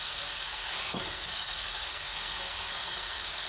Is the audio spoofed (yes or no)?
yes